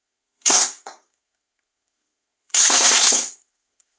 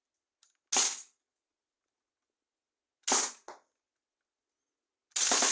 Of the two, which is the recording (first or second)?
second